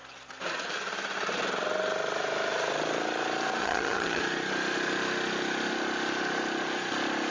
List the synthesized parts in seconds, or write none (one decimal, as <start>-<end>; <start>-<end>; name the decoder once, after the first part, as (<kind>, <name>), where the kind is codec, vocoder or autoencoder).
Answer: 3.6-4.2 (vocoder, HiFi-GAN)